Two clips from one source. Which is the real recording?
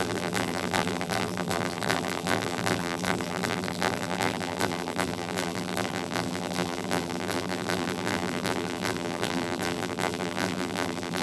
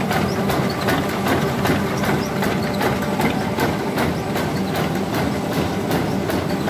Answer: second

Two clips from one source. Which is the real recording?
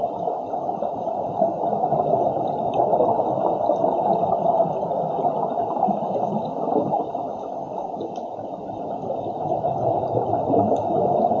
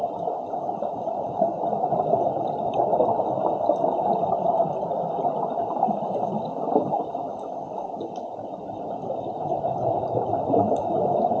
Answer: first